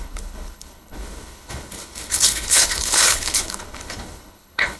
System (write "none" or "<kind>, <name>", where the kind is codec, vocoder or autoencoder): codec, HILCodec